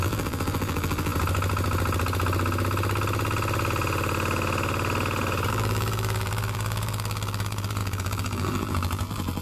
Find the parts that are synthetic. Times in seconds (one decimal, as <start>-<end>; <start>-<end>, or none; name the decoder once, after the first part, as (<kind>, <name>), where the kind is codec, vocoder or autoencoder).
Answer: 0.0-1.1 (vocoder, BigVGAN v2); 5.5-9.4

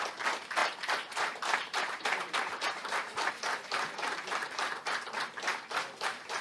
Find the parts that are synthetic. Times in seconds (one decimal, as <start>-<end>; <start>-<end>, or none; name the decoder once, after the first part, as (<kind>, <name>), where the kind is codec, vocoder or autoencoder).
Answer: 0.6-3.3 (vocoder, BigVGAN v2); 4.4-4.9

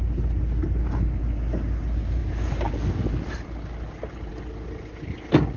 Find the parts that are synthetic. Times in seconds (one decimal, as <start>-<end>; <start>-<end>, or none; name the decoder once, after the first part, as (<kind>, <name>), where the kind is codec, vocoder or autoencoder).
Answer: none

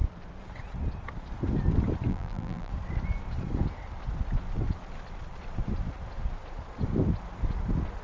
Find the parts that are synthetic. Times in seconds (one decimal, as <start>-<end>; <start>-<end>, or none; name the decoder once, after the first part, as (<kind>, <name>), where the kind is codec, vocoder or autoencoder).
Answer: 2.1-2.7 (vocoder, BigVGAN v2)

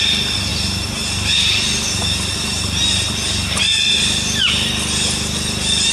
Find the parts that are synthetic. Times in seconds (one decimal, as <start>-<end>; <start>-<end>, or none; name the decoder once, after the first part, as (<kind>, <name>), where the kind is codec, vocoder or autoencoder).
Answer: none